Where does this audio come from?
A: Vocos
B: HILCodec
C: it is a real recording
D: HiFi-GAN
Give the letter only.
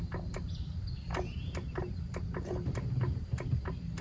C